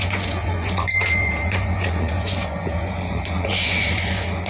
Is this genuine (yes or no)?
no